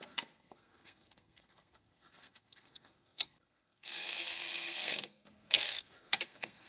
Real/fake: fake